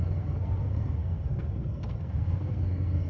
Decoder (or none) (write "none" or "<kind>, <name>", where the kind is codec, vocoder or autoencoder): codec, SNAC